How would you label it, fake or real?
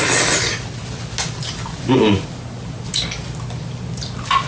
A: real